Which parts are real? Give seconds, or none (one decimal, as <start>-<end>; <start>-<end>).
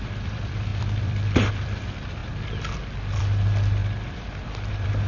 2.2-3.2